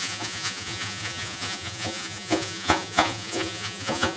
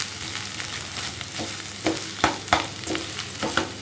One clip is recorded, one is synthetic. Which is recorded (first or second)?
second